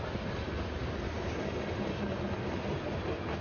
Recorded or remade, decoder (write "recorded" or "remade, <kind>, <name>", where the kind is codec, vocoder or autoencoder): recorded